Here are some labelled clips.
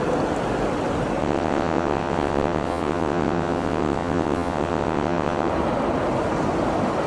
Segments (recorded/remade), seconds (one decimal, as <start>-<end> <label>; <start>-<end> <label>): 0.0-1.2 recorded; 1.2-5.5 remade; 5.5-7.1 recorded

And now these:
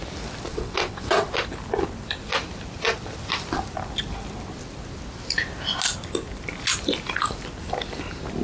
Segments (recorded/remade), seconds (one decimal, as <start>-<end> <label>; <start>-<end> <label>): 0.0-0.5 recorded; 0.5-1.3 remade; 1.3-8.4 recorded

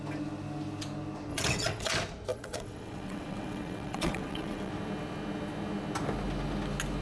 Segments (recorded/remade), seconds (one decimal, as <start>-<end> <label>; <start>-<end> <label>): 0.0-1.3 recorded; 1.3-1.9 remade; 1.9-2.3 recorded; 2.3-4.7 remade; 4.7-7.0 recorded

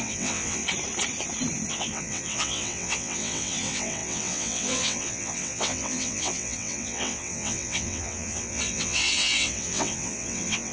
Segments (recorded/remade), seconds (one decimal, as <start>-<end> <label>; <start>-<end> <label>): 0.0-0.6 remade; 0.6-1.7 recorded; 1.7-10.7 remade

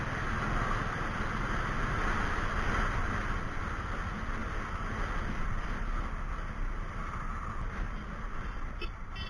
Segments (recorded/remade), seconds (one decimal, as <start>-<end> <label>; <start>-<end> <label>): 0.0-9.3 recorded

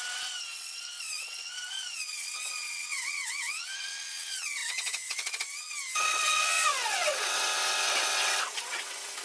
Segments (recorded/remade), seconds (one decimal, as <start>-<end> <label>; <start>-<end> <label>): 0.0-9.2 remade

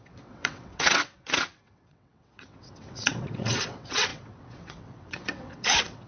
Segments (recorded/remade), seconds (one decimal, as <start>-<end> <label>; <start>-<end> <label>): 0.0-6.1 remade